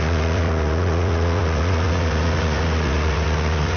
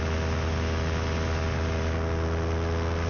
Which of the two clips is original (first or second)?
second